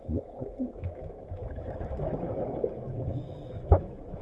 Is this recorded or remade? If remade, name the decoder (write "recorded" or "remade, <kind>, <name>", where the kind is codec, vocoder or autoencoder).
remade, autoencoder, DAC-VAE